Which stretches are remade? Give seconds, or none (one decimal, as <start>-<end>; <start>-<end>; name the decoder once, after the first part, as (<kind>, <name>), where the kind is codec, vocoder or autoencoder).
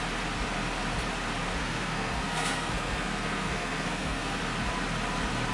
1.6-4.4 (codec, SNAC)